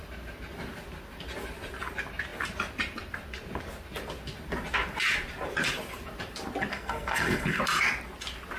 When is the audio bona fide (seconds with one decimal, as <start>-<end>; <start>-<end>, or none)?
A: 0.0-6.7; 7.6-8.6